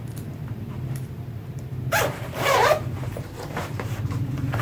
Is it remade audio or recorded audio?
remade